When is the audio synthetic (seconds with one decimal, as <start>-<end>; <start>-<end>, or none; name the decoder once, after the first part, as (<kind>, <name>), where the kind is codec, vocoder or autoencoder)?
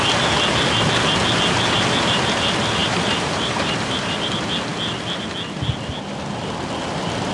2.8-4.3 (vocoder, BigVGAN v2)